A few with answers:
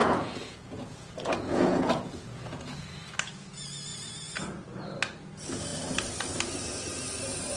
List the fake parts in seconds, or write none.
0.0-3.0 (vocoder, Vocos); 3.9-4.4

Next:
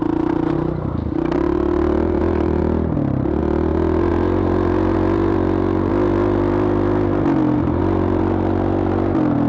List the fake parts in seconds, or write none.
none

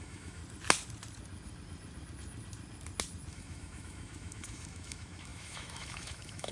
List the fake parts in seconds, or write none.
0.0-0.4 (autoencoder, DAC-VAE); 3.3-6.5

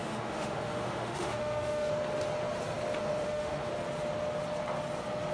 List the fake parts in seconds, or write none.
0.0-1.9 (autoencoder, DAC-VAE); 3.0-3.7

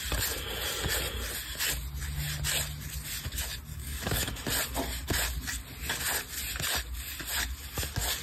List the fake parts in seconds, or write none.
3.7-4.3 (codec, DAC)

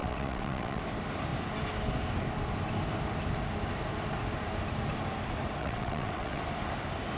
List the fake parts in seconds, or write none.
0.0-0.8 (vocoder, WaveNeXt); 5.6-6.4